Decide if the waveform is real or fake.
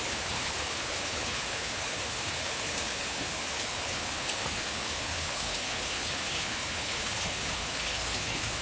fake